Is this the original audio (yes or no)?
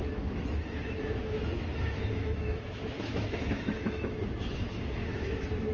no